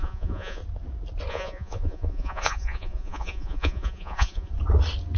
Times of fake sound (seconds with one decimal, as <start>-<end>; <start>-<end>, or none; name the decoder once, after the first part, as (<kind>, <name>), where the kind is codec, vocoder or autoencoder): 0.0-0.6 (vocoder, Vocos); 1.3-4.5